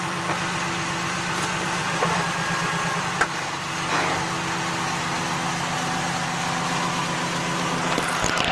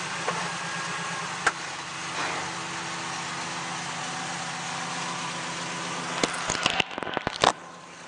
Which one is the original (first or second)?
second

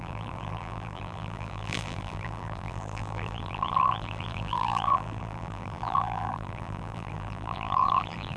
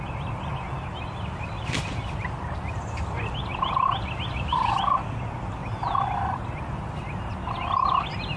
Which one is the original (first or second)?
second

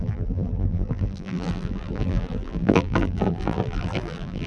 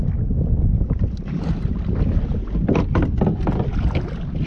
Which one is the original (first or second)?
second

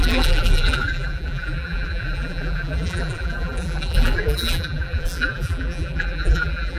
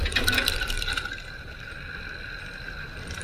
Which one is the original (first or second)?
second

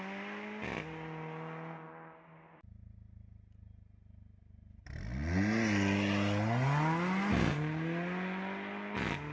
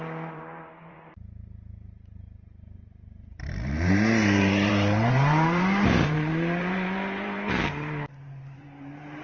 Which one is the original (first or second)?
first